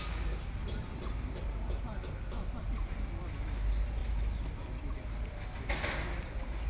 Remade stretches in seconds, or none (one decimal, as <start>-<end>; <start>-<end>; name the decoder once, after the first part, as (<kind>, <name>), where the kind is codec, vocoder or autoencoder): none